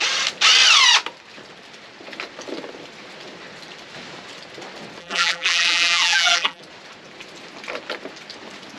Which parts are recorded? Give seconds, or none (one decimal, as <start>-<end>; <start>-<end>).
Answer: 0.0-5.0; 6.6-8.8